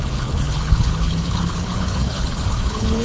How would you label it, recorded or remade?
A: remade